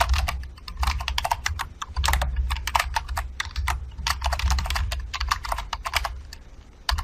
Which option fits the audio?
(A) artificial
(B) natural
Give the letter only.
A